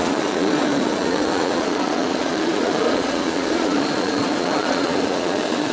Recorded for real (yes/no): no